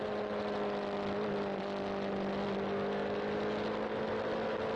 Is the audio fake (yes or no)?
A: no